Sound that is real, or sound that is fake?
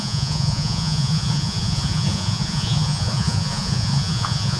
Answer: fake